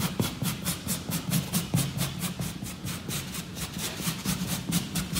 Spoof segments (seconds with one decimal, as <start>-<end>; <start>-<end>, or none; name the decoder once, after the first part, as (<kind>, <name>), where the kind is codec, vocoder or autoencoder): 0.0-0.9 (vocoder, BigVGAN v2); 3.2-5.2